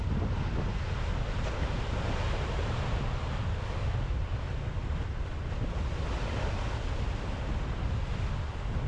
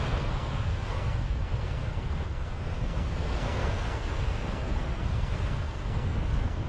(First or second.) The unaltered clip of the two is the first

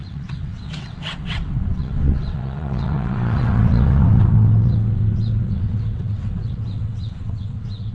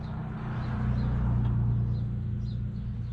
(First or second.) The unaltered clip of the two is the second